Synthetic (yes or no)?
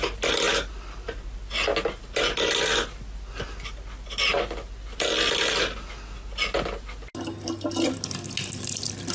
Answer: no